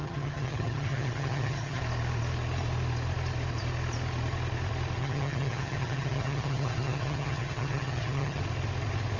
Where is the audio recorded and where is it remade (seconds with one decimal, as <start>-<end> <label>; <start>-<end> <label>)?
0.0-1.8 remade; 1.8-5.0 recorded; 5.0-8.4 remade; 8.4-9.2 recorded